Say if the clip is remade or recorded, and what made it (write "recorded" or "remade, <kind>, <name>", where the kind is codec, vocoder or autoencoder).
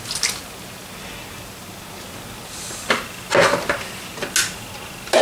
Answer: recorded